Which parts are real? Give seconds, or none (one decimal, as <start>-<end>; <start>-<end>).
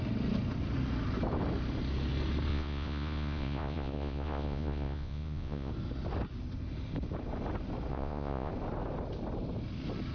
0.0-2.5; 5.7-7.9; 8.5-10.1